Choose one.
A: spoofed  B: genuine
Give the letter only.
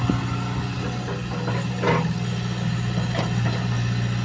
B